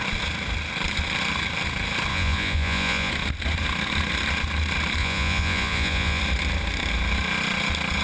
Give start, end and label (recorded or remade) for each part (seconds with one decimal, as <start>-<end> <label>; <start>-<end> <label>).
0.0-2.1 recorded; 2.1-3.1 remade; 3.1-5.0 recorded; 5.0-6.2 remade; 6.2-8.0 recorded